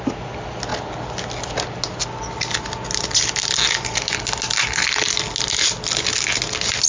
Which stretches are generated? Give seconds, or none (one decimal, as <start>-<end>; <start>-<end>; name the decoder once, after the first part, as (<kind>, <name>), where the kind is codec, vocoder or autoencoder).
none